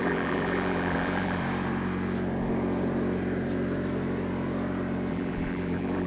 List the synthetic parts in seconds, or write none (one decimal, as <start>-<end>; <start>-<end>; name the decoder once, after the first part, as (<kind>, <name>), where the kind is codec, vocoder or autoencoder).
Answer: 0.0-1.4 (vocoder, BigVGAN v2); 5.1-6.1